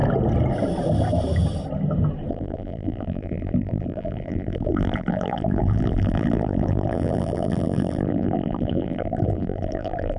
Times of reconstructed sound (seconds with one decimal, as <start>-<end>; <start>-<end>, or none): 2.3-10.2